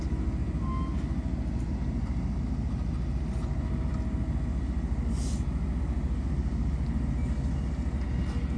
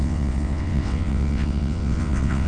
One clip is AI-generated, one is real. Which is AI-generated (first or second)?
second